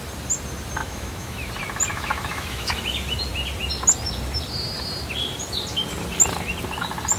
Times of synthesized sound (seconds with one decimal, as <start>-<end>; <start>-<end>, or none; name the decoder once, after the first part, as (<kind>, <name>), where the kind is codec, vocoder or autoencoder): 0.8-1.5 (autoencoder, DAC-VAE); 1.9-2.8